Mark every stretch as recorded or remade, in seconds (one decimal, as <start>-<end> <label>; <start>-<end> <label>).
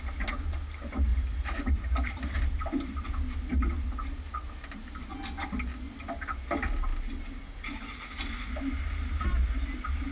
0.0-1.1 recorded; 1.1-3.1 remade; 3.1-10.1 recorded